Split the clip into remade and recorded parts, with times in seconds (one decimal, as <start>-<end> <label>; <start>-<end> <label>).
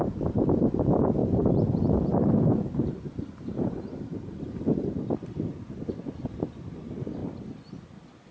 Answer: 0.0-1.2 recorded; 1.2-4.4 remade; 4.4-8.3 recorded